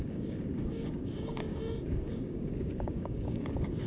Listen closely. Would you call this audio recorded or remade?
remade